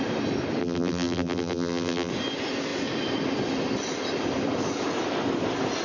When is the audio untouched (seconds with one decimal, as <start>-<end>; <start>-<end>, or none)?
0.0-0.6; 2.1-5.8